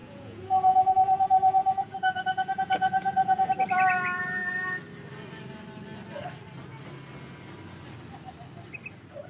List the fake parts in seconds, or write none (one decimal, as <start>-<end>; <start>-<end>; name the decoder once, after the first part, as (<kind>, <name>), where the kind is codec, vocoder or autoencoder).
0.0-3.5 (vocoder, Vocos)